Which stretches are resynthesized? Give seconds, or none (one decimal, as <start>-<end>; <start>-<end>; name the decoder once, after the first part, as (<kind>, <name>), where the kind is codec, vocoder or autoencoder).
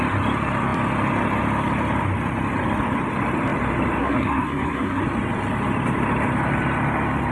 4.0-5.0 (codec, SNAC)